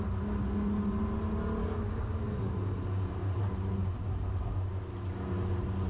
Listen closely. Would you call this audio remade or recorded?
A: recorded